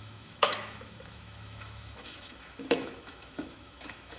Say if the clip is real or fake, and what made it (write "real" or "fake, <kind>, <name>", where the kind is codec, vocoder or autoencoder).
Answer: fake, autoencoder, DAC-VAE